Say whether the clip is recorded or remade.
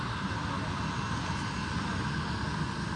recorded